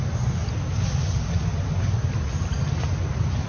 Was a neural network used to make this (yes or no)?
no